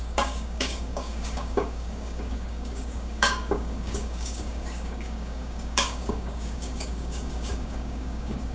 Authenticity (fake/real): fake